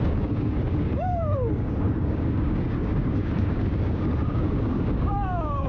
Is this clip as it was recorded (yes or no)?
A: no